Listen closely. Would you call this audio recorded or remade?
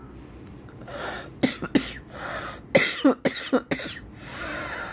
recorded